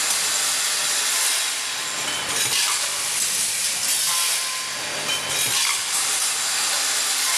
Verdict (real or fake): fake